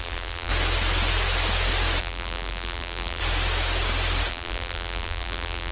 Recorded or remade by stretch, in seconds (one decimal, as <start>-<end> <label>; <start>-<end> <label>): 0.0-0.5 remade; 0.5-2.0 recorded; 2.0-3.2 remade; 3.2-4.3 recorded; 4.3-5.7 remade